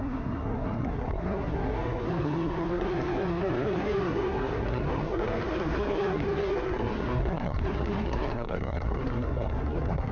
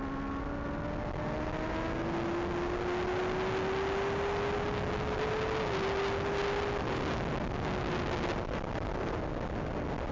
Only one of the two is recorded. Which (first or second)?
second